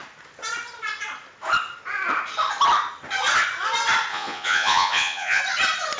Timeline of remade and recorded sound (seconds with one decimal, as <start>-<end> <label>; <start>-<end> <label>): 0.0-4.1 recorded; 4.1-5.4 remade; 5.4-6.0 recorded